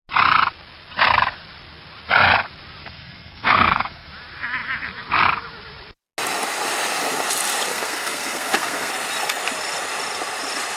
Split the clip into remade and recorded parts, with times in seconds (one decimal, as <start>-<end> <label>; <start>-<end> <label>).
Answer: 0.0-2.8 recorded; 2.8-4.1 remade; 4.1-7.7 recorded; 7.7-8.9 remade; 8.9-10.8 recorded